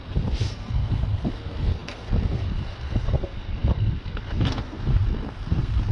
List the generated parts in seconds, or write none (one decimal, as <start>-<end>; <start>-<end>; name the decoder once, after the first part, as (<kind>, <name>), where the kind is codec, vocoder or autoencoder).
0.0-5.9 (codec, SNAC)